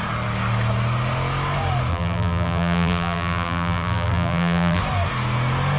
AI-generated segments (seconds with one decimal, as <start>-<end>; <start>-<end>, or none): 1.9-4.8